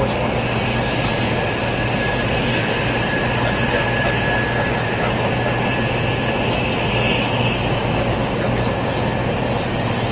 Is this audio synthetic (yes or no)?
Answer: no